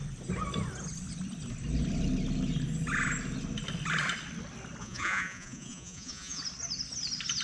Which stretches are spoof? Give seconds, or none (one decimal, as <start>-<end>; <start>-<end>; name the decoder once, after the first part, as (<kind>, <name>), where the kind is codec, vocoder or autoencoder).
4.8-6.4 (vocoder, Vocos)